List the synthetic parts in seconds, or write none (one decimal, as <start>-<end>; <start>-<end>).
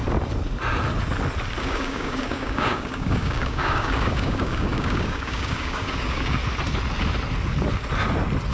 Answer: 1.6-6.4